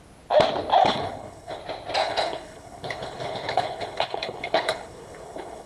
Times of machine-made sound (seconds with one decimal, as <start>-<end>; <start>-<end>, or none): 0.8-1.6; 2.0-5.7